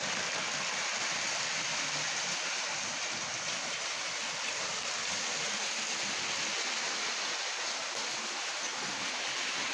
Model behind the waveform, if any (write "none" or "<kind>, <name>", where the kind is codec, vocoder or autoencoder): none